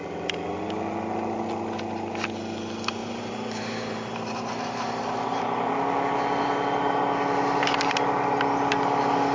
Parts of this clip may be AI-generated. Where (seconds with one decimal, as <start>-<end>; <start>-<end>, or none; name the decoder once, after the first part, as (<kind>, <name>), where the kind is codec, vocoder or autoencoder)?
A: 3.0-5.4 (vocoder, BigVGAN v2)